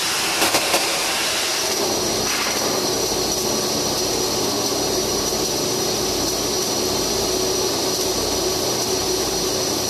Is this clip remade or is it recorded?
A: recorded